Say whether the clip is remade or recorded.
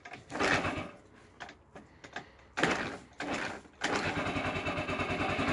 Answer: recorded